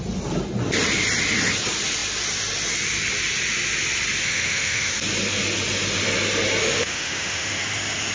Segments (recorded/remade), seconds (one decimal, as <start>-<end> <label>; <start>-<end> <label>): 0.0-4.2 recorded; 4.2-4.9 remade; 4.9-6.6 recorded; 6.6-7.6 remade; 7.6-8.1 recorded